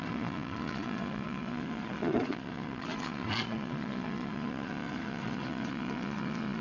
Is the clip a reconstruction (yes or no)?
yes